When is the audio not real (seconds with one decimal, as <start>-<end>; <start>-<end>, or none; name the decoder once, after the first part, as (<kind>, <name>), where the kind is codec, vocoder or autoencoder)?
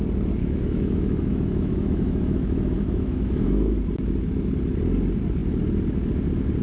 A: 0.4-3.7 (autoencoder, DAC-VAE)